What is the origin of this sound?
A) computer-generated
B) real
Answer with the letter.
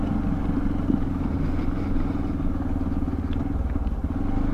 B